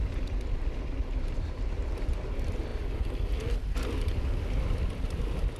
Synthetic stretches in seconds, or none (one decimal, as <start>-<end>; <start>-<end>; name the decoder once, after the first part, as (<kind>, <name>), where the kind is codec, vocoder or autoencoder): none